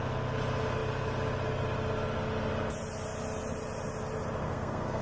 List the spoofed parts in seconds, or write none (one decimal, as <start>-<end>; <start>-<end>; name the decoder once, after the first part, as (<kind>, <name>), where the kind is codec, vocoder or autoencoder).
4.4-5.0 (codec, SNAC)